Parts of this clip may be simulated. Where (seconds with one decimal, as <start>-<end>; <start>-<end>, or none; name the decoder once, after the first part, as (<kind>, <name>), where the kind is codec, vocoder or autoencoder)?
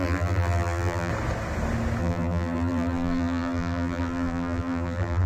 0.0-1.1 (vocoder, BigVGAN v2); 2.0-5.3